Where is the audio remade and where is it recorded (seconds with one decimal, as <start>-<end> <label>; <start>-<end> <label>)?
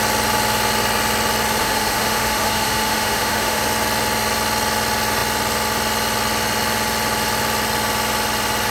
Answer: 0.0-1.6 recorded; 1.6-3.6 remade; 3.6-8.7 recorded